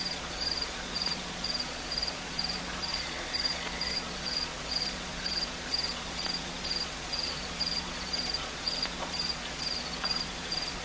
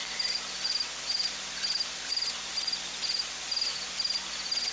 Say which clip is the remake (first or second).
first